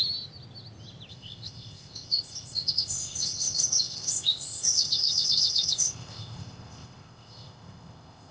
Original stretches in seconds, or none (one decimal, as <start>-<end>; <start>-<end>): 0.0-1.1